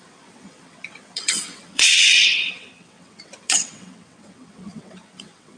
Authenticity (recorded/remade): remade